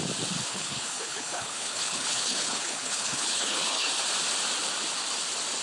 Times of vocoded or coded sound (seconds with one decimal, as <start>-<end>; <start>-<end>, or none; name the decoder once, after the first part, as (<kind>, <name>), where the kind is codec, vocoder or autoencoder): 0.5-3.9 (codec, HILCodec)